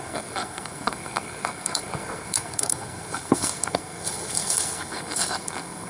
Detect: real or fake fake